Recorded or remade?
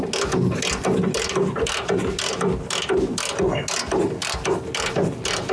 recorded